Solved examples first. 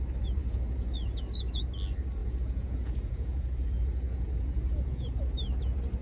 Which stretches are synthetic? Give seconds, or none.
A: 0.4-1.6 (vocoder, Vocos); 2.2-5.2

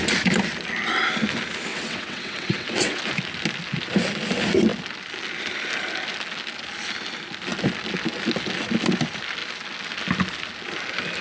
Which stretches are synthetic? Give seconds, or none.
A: 1.7-3.0 (vocoder, WaveNeXt)

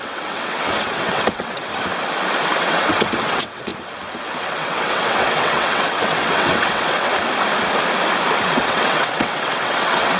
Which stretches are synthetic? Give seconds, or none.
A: 0.0-1.7 (vocoder, WaveNeXt); 2.6-3.7; 4.4-7.1; 8.4-10.2

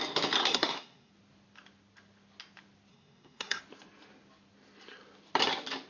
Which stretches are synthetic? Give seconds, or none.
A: 0.4-1.1 (codec, SNAC); 2.9-3.6

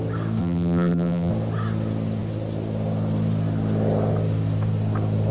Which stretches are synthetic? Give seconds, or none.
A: 0.4-1.3 (vocoder, BigVGAN v2)

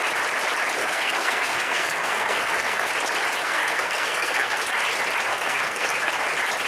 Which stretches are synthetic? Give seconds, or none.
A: 0.8-2.9 (codec, SNAC); 3.4-4.6; 5.3-6.1

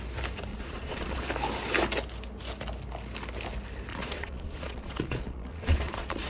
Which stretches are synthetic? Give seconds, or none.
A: 0.5-1.3 (vocoder, Vocos); 3.9-6.3

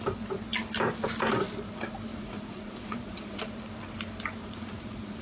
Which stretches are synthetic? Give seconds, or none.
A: 2.1-3.4 (vocoder, Vocos); 4.4-5.2